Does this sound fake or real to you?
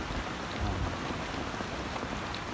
real